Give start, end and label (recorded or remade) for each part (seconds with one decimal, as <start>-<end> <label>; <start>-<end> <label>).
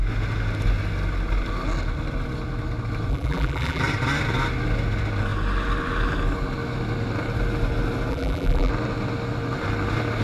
0.0-3.1 recorded; 3.1-3.8 remade; 3.8-8.1 recorded; 8.1-8.7 remade; 8.7-10.2 recorded